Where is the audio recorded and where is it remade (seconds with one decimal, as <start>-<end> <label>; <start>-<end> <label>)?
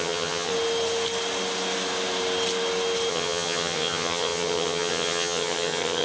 0.0-0.5 remade; 0.5-3.1 recorded; 3.1-6.0 remade